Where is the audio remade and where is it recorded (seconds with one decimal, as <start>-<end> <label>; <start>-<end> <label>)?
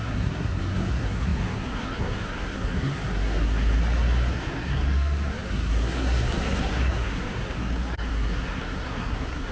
0.0-3.8 remade; 3.8-4.3 recorded; 4.3-9.5 remade